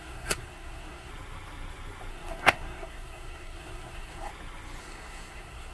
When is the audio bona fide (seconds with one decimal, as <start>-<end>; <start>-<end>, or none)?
1.1-2.1; 4.3-4.8